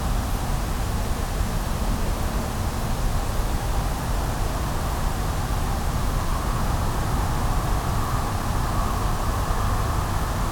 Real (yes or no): yes